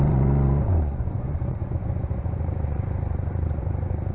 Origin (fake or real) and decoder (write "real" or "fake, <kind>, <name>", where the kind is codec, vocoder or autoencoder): fake, vocoder, Vocos